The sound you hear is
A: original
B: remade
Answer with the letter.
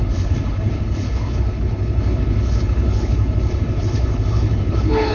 B